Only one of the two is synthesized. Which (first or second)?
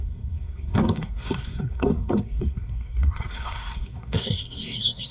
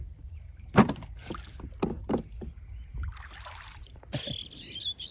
first